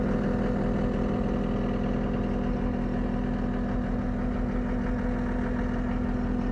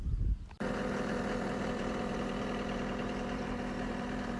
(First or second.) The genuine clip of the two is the first